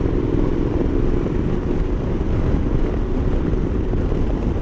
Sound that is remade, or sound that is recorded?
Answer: recorded